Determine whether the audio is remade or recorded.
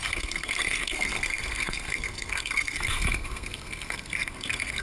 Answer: remade